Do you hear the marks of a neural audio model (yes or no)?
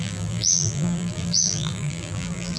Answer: yes